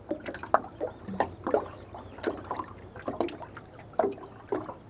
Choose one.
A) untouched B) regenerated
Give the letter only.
A